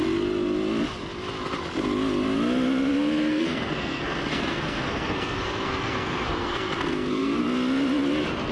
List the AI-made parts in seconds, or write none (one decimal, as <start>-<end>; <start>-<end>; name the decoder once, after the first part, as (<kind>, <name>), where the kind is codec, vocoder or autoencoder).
3.3-7.4 (codec, SNAC)